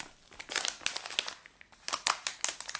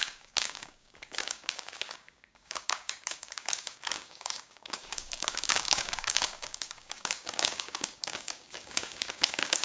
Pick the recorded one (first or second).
first